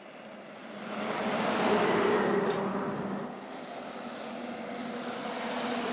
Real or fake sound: real